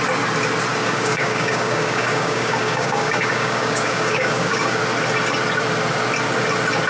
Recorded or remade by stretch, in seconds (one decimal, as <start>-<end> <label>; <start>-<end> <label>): 0.0-0.7 recorded; 0.7-4.8 remade; 4.8-6.9 recorded